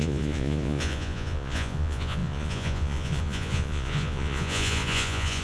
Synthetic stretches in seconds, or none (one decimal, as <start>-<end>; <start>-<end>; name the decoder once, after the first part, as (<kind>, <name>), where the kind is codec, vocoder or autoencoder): 0.0-5.4 (vocoder, Vocos)